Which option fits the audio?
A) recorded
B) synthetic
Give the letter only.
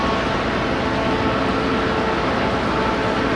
A